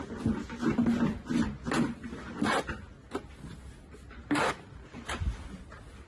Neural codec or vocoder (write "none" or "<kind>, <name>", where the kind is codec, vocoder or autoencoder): none